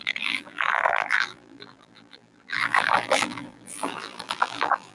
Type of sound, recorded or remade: remade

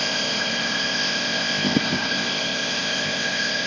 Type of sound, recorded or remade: remade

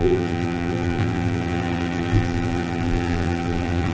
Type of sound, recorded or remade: remade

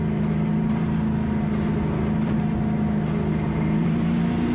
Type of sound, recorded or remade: recorded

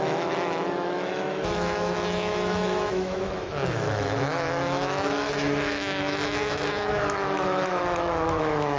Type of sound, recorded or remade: remade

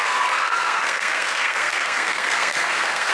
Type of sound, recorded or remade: remade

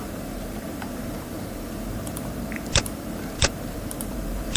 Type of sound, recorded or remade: remade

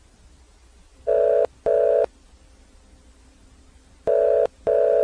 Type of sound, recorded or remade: recorded